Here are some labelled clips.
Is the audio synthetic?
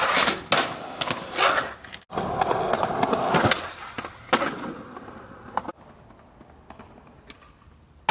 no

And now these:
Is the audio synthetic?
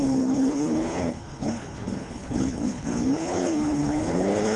yes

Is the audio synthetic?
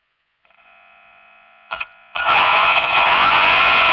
yes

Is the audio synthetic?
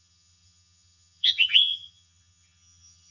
yes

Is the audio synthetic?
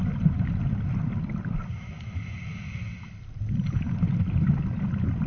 no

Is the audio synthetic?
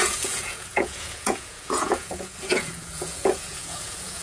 yes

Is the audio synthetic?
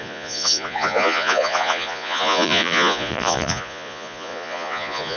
yes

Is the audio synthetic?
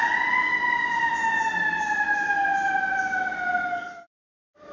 no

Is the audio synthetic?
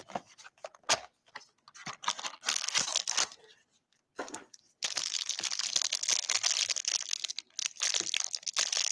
no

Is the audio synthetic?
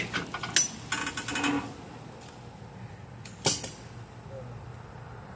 no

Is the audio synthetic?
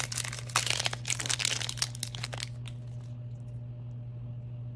no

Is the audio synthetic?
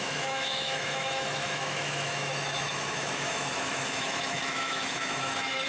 yes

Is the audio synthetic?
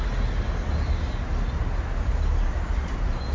no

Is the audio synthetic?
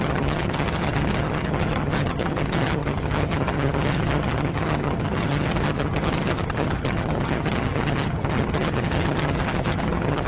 yes